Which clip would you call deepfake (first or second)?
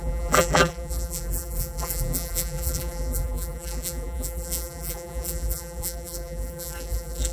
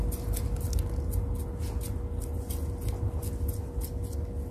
first